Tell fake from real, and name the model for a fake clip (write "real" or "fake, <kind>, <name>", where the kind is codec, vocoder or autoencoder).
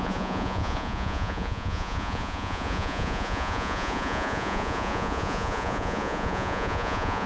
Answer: fake, vocoder, Vocos